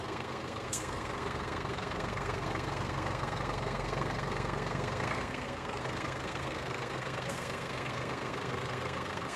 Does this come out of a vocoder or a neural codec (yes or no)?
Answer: yes